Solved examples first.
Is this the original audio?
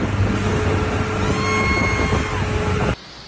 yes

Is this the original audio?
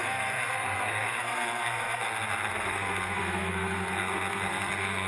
no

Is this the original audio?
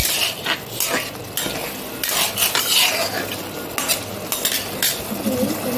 yes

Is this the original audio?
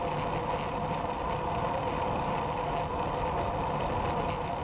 yes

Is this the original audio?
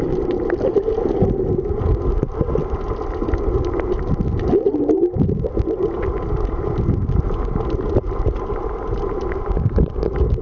yes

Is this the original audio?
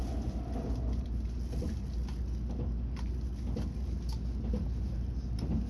yes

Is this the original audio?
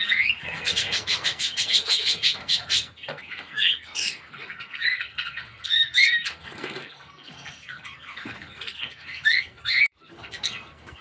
no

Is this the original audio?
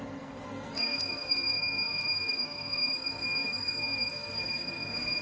no